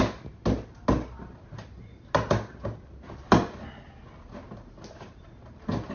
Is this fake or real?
real